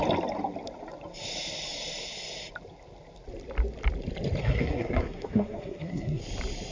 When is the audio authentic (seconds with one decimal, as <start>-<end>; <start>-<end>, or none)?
0.0-4.4; 6.2-6.7